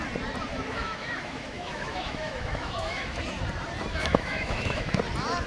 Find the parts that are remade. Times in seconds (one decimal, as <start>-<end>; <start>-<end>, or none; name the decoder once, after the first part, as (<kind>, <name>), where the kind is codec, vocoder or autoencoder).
0.5-3.2 (autoencoder, DAC-VAE); 3.9-5.0